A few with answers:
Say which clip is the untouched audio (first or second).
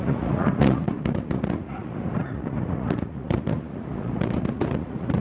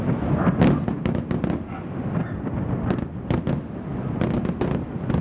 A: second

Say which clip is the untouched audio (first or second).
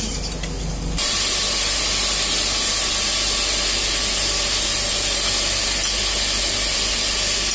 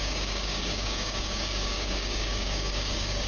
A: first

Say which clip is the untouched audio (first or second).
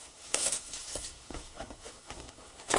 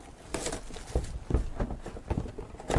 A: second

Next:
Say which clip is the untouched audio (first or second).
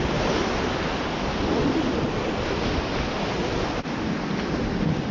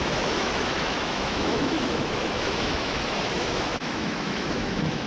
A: first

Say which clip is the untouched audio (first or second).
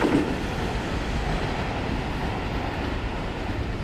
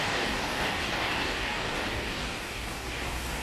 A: first